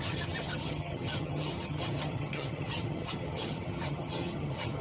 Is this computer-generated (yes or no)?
yes